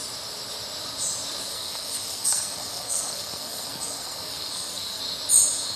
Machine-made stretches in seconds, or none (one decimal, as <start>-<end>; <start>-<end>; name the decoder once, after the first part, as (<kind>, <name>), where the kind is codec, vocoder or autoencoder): 1.5-5.0 (codec, SNAC)